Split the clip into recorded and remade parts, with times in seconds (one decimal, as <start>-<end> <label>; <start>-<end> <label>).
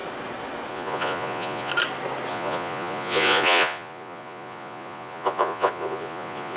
0.0-0.7 recorded; 0.7-1.7 remade; 1.7-2.3 recorded; 2.3-6.6 remade